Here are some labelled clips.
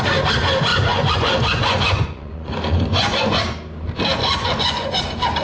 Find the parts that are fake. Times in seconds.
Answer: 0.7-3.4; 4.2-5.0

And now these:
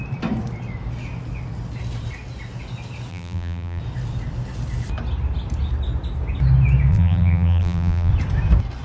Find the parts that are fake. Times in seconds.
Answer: 3.1-3.8; 6.9-8.1